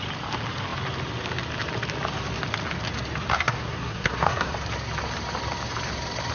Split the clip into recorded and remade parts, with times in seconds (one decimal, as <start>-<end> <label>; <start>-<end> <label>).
0.0-3.3 recorded; 3.3-4.5 remade; 4.5-6.3 recorded

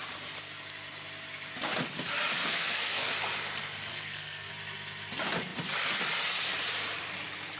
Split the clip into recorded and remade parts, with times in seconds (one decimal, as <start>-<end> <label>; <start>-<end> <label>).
0.0-2.4 recorded; 2.4-3.1 remade; 3.1-3.9 recorded; 3.9-4.5 remade; 4.5-7.6 recorded